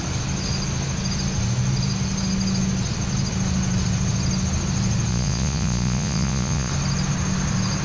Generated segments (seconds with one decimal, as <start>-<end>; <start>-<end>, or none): 5.1-6.7